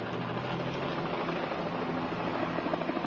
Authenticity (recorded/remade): recorded